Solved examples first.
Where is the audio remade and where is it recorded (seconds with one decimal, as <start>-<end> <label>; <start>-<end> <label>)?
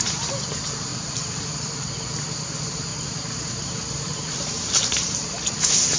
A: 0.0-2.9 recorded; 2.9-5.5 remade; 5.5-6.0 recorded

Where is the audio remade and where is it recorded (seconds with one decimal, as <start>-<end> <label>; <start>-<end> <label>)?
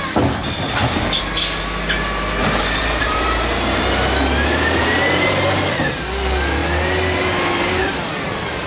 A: 0.0-2.4 recorded; 2.4-5.9 remade; 5.9-8.7 recorded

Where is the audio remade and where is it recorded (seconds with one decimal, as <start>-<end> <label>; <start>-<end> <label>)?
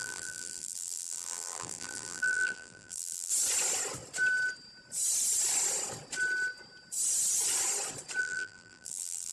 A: 0.0-3.3 remade; 3.3-8.2 recorded; 8.2-9.3 remade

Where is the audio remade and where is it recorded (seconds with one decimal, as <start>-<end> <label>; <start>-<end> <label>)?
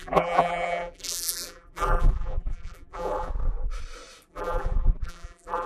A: 0.0-3.3 remade; 3.3-4.3 recorded; 4.3-5.7 remade